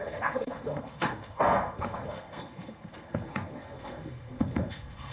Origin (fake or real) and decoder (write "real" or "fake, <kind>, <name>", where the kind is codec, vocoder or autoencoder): fake, codec, SNAC